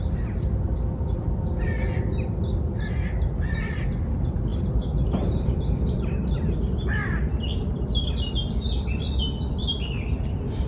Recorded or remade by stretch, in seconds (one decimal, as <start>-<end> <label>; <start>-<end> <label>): 0.0-10.7 recorded